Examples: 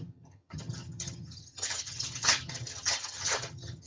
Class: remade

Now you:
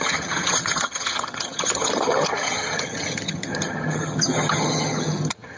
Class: remade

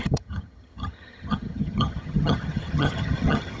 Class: remade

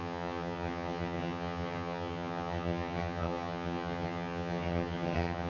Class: remade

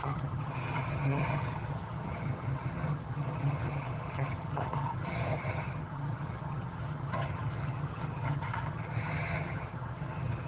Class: remade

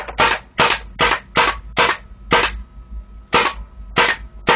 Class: recorded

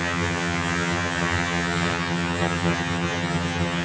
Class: remade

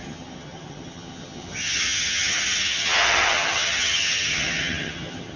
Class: remade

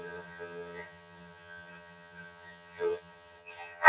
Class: remade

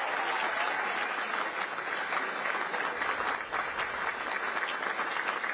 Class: recorded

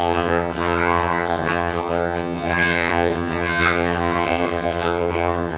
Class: remade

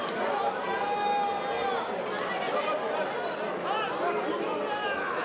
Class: recorded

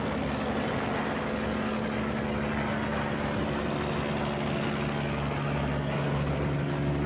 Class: recorded